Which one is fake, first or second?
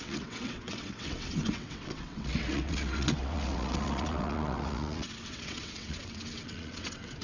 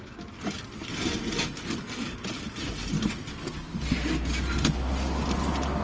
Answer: first